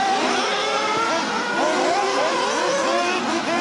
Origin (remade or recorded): recorded